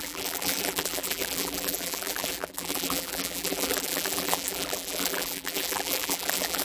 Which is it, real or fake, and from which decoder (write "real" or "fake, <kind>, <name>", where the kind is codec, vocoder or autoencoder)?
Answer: fake, vocoder, BigVGAN v2